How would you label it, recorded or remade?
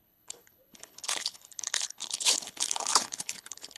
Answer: remade